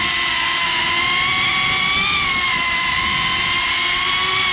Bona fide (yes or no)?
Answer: yes